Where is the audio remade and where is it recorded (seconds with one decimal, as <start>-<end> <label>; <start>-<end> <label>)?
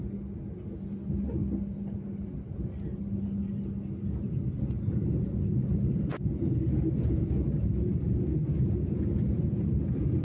0.0-10.2 recorded